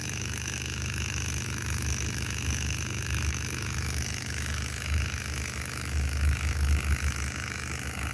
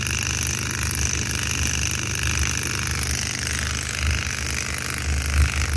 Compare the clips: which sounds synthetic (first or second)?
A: first